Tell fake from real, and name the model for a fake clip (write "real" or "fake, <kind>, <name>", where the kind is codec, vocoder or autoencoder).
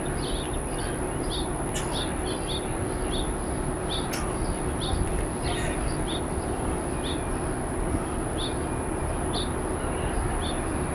real